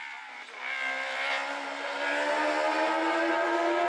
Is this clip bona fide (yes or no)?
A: yes